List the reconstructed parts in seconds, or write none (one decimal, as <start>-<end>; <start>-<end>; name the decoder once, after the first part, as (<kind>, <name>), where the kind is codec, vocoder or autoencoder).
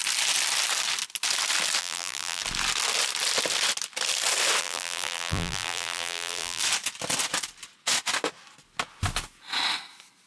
1.8-2.4 (vocoder, BigVGAN v2); 4.6-6.6